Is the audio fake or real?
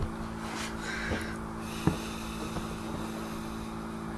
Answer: real